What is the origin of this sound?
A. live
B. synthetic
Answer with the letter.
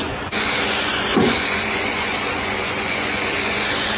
B